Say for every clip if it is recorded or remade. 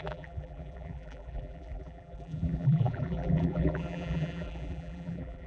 remade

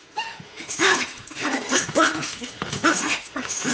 remade